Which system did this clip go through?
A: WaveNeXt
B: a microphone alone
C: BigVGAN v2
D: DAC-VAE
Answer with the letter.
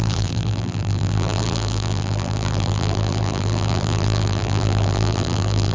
C